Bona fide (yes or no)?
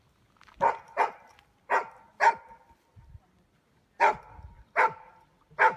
yes